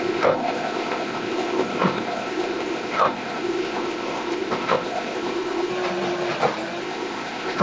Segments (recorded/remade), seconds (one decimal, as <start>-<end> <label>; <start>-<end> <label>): 0.0-5.7 remade; 5.7-6.8 recorded; 6.8-7.6 remade